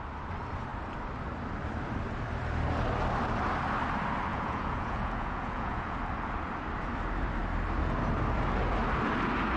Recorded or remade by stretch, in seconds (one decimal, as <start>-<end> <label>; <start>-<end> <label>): 0.0-4.3 recorded; 4.3-6.0 remade; 6.0-9.6 recorded